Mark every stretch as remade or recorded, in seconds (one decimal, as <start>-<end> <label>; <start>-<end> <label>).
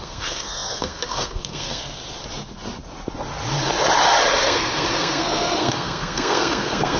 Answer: 0.0-2.0 remade; 2.0-4.4 recorded; 4.4-7.0 remade